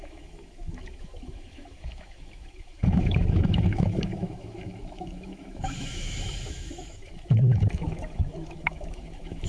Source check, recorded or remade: remade